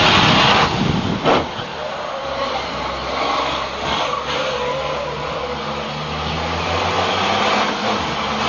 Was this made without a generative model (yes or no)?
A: yes